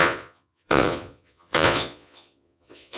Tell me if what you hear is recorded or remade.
remade